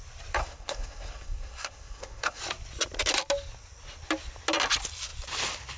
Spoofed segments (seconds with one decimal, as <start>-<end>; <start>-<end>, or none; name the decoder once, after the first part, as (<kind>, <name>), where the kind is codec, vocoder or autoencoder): 0.4-2.4 (codec, SNAC)